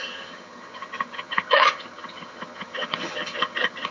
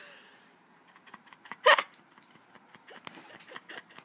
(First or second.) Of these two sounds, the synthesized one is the first